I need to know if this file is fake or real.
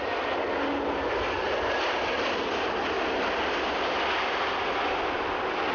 real